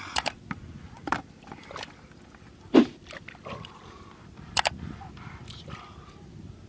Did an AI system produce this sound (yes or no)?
yes